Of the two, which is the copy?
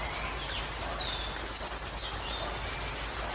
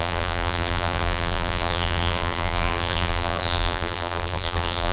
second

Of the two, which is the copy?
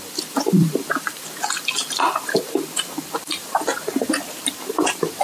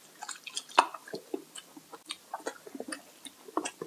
first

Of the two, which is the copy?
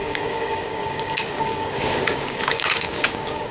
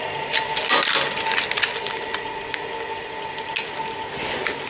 first